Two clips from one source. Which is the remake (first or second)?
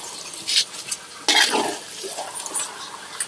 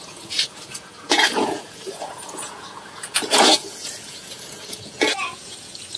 second